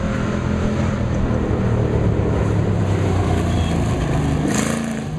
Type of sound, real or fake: real